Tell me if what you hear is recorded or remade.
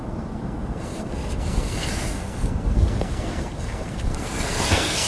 remade